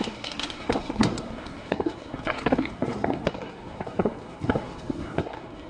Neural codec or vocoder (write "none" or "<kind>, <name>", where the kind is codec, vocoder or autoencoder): codec, SNAC